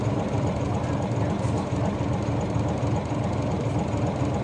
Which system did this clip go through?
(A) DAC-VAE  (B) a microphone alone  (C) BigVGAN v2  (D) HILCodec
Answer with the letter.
C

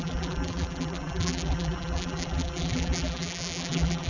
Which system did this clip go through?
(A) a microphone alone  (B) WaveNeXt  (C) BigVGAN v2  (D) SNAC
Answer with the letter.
C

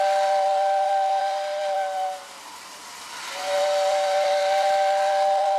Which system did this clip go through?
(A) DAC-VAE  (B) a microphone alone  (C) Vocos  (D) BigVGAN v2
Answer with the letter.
D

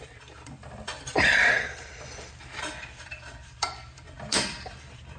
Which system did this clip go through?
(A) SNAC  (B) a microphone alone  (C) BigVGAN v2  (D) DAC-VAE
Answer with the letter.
C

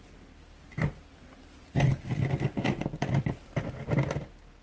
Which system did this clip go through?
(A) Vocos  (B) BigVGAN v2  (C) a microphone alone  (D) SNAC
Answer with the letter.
C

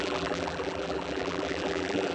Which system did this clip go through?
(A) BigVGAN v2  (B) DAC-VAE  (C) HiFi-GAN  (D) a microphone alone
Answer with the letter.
A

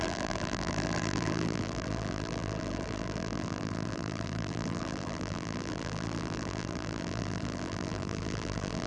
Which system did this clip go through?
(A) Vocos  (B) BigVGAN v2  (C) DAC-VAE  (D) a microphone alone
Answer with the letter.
B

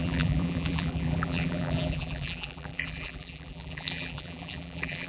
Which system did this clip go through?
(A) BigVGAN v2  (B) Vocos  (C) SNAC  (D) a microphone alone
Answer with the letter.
A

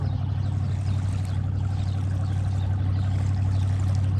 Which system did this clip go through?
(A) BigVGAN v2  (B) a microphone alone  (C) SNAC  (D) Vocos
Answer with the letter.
B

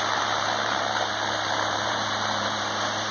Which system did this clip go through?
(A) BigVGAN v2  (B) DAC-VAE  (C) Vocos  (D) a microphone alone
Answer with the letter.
A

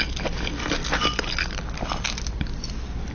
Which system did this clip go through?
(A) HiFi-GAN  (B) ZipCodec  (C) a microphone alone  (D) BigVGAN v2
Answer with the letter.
C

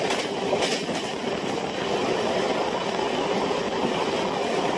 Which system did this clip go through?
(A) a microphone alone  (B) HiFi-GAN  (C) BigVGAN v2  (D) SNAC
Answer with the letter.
A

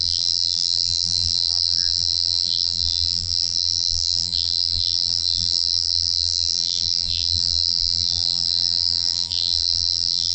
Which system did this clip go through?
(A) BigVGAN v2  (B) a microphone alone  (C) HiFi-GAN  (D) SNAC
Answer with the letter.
A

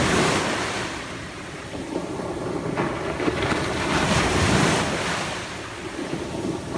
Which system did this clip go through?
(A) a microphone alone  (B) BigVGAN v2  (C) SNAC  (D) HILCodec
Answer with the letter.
B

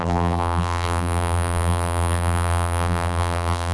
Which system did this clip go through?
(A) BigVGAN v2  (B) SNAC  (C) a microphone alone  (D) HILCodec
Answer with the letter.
A